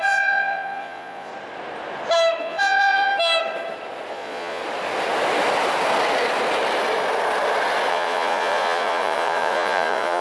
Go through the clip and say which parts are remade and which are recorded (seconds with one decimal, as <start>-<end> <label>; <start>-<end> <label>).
0.0-1.3 remade; 1.3-2.4 recorded; 2.4-3.1 remade; 3.1-4.1 recorded; 4.1-4.6 remade; 4.6-7.9 recorded; 7.9-10.2 remade